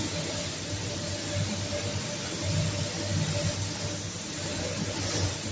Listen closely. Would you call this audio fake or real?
real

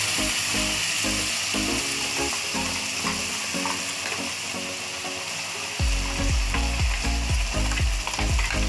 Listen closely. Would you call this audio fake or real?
real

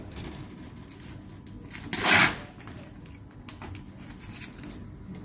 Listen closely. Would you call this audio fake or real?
real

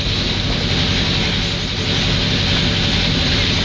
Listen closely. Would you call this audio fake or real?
real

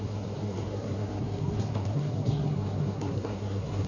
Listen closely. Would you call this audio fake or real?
fake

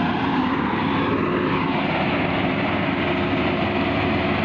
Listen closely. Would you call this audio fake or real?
real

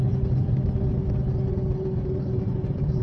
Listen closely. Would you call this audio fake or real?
real